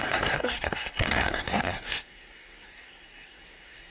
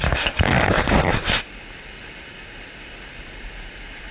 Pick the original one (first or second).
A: second